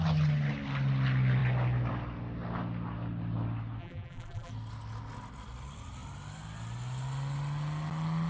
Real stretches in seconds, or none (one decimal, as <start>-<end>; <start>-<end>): 0.0-3.8; 4.5-8.3